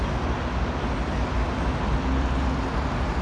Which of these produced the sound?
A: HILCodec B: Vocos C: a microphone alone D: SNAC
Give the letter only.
C